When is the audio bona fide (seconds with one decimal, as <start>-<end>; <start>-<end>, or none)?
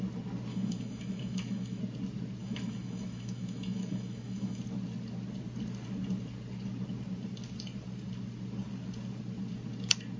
0.0-0.5; 1.8-2.4; 4.6-10.2